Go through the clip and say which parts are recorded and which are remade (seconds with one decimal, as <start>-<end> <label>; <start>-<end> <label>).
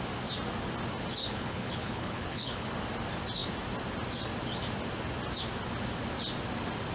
0.0-1.2 recorded; 1.2-2.7 remade; 2.7-6.9 recorded